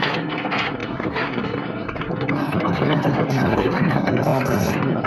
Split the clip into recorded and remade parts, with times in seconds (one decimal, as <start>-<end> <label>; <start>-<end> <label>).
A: 0.0-5.1 remade